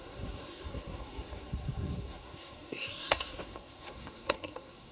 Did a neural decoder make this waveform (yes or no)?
yes